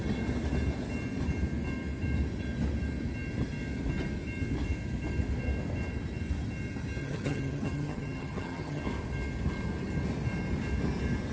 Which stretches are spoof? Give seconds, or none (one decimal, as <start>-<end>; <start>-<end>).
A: 7.0-8.8